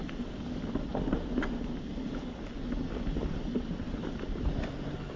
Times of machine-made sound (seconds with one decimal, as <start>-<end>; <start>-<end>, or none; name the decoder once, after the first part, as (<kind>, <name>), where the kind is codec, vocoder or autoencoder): 0.9-2.5 (vocoder, BigVGAN v2); 3.2-4.7